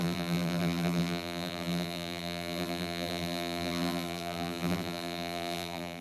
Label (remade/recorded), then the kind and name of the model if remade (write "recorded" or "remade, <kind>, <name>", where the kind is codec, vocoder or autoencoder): remade, vocoder, BigVGAN v2